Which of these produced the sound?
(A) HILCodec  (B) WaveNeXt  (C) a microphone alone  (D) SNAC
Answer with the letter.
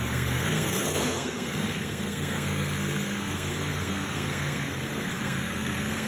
D